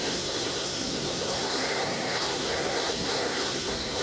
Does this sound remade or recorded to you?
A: remade